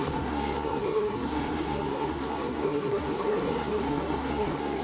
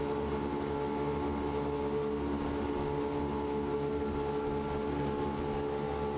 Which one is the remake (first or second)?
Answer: first